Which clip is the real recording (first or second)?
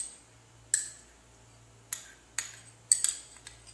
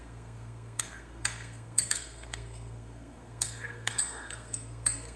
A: first